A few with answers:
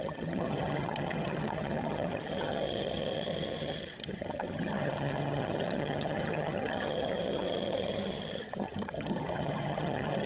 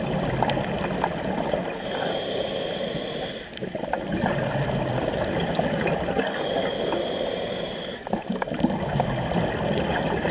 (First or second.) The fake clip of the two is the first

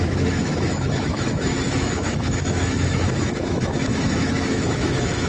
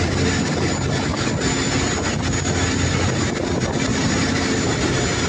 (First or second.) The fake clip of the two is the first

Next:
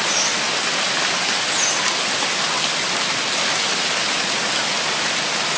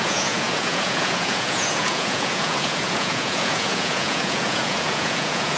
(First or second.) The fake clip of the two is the second